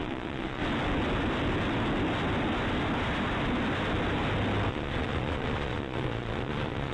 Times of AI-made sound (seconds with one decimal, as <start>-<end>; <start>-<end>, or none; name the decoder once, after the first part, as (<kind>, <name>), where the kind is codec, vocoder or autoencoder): 0.0-0.6 (vocoder, Vocos); 4.7-6.9